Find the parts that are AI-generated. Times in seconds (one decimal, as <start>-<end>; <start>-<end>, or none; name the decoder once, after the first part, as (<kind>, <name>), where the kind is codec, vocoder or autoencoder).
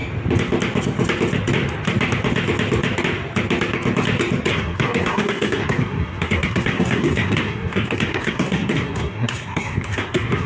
4.5-10.5 (codec, SNAC)